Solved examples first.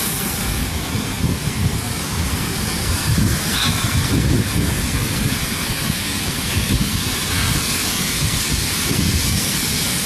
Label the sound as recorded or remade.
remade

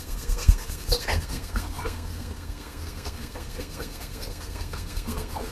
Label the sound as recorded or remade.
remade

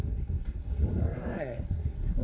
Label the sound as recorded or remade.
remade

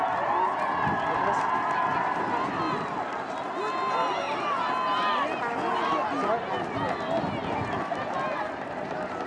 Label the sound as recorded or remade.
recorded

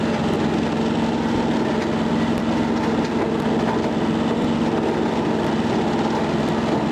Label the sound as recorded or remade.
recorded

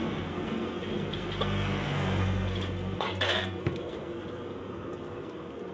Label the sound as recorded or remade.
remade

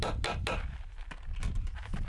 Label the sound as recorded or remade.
recorded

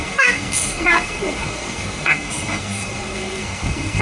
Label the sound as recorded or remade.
remade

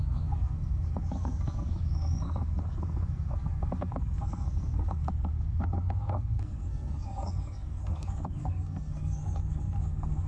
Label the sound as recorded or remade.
remade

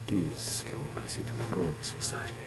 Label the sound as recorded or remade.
remade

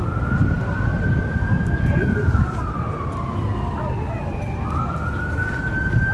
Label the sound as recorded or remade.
recorded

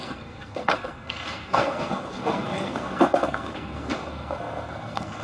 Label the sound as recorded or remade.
remade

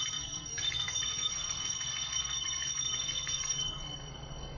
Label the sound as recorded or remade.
remade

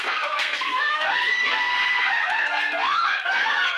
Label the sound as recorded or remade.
remade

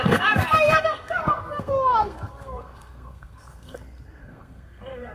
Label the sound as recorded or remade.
remade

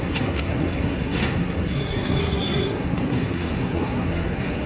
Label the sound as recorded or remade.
remade